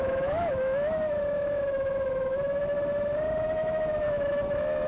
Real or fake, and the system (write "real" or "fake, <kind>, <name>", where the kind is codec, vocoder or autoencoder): fake, autoencoder, DAC-VAE